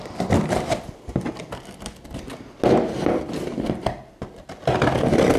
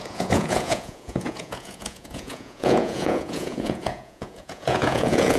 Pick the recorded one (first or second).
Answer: first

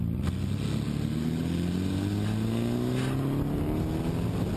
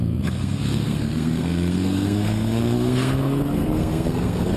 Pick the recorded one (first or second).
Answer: first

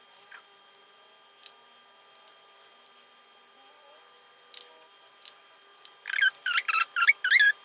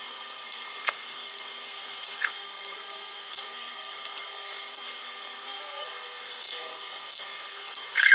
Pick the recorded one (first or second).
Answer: first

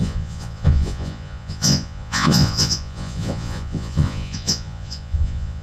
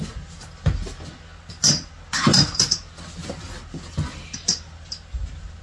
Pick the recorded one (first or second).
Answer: second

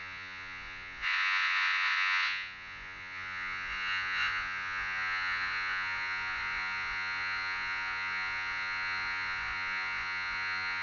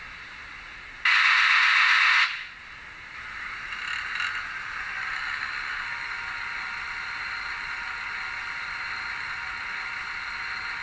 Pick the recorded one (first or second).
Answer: second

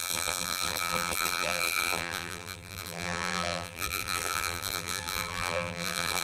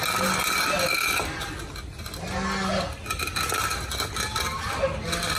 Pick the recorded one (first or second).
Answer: second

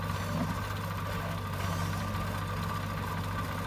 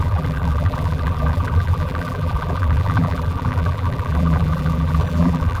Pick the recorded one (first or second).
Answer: first